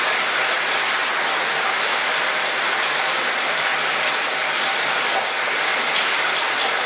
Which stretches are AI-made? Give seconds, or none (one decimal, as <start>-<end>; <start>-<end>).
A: 0.0-1.0; 3.1-3.7; 4.3-5.1; 5.8-6.9